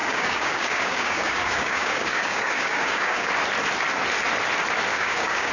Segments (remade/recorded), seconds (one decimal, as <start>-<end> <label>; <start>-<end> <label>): 0.0-3.3 remade; 3.3-4.9 recorded; 4.9-5.5 remade